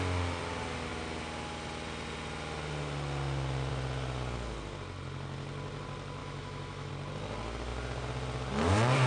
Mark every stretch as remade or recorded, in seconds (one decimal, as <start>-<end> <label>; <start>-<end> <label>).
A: 0.0-6.2 recorded; 6.2-6.9 remade; 6.9-9.1 recorded